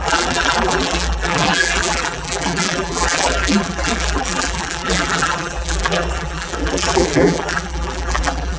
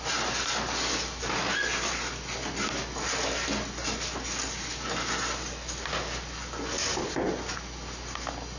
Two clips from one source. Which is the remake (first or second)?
first